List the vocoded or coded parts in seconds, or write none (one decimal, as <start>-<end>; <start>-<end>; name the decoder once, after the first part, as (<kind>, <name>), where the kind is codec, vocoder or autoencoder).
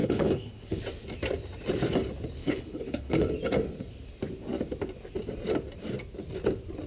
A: 0.0-0.8 (codec, HILCodec); 2.4-3.3